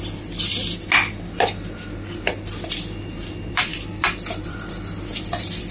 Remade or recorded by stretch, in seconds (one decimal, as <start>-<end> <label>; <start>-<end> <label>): 0.0-0.5 remade; 0.5-2.6 recorded; 2.6-5.7 remade